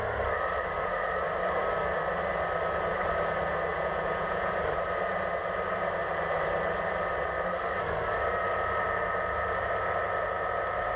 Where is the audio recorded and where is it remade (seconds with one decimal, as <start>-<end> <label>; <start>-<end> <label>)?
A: 0.0-3.7 recorded; 3.7-4.5 remade; 4.5-11.0 recorded